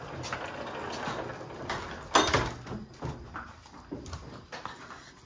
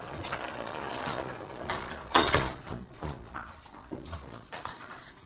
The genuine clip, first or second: first